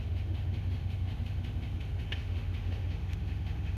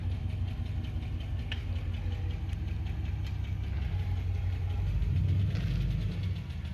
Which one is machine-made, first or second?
first